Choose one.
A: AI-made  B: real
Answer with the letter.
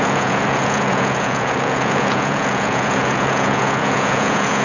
A